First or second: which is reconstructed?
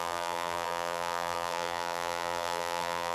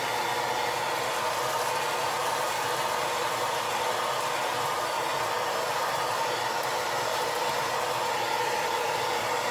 first